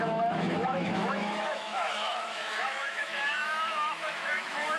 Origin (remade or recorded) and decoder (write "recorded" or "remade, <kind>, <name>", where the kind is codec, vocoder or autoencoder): remade, autoencoder, DAC-VAE